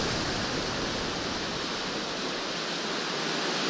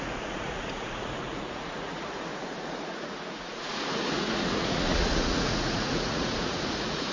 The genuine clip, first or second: first